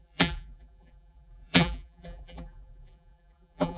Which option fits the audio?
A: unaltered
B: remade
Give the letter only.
B